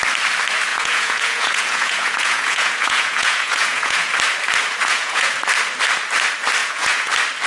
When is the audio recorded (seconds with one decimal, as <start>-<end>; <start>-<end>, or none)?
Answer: 0.0-0.7; 4.1-4.8; 5.3-6.6; 7.1-7.5